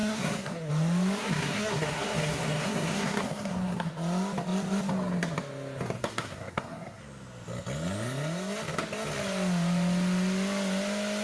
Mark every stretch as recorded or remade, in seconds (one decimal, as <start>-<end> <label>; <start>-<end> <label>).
0.0-0.7 remade; 0.7-1.2 recorded; 1.2-3.9 remade; 3.9-6.0 recorded; 6.0-7.0 remade; 7.0-11.2 recorded